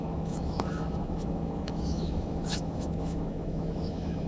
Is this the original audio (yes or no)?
no